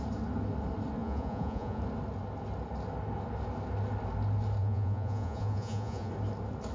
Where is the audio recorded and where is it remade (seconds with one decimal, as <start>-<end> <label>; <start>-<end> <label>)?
0.0-1.0 recorded; 1.0-1.8 remade; 1.8-4.6 recorded; 4.6-6.1 remade; 6.1-6.7 recorded